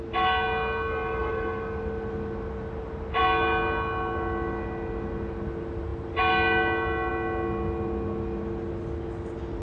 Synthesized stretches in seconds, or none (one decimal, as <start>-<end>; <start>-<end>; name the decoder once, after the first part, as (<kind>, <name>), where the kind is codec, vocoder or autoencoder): none